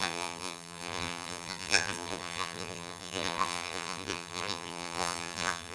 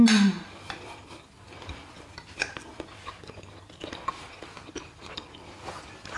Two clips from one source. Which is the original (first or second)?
second